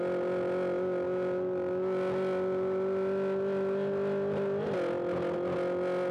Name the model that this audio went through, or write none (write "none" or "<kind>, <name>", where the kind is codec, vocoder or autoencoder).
none